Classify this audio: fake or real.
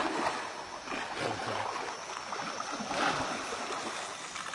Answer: real